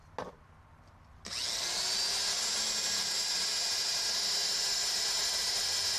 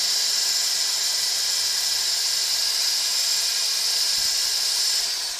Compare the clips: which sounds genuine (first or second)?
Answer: first